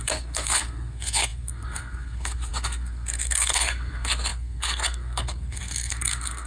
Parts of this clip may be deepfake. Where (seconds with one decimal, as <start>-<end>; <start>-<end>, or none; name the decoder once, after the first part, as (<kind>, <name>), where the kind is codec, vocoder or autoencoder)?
0.0-6.5 (codec, SNAC)